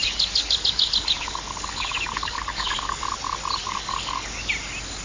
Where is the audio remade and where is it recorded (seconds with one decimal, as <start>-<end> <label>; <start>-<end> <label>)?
0.0-3.0 remade; 3.0-3.6 recorded; 3.6-4.5 remade; 4.5-5.0 recorded